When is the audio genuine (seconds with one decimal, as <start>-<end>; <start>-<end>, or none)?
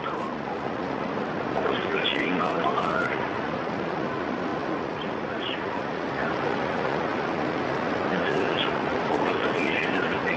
none